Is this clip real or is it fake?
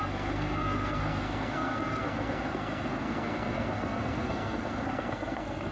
fake